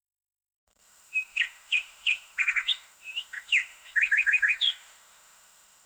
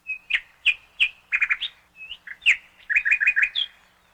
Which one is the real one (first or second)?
second